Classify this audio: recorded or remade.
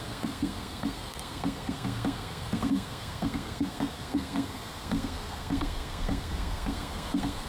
remade